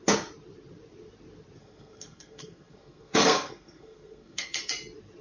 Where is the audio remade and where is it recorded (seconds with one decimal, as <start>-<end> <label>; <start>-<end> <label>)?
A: 0.0-1.6 recorded; 1.6-4.7 remade; 4.7-5.2 recorded